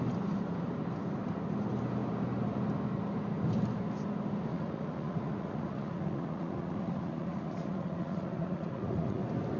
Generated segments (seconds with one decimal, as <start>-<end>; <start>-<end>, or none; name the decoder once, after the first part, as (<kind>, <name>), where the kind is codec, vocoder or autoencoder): 4.5-9.2 (vocoder, Vocos)